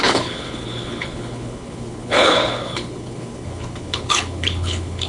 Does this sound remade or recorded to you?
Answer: remade